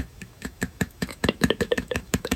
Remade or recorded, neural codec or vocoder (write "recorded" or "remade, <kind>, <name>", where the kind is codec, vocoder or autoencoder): remade, autoencoder, DAC-VAE